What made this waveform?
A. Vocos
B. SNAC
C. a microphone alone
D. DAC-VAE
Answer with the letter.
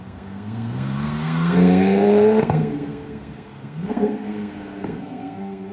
B